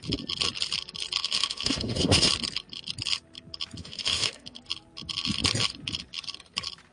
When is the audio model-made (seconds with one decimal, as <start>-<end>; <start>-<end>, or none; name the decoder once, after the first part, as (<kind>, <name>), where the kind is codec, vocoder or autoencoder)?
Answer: 1.2-2.3 (autoencoder, DAC-VAE); 3.8-4.6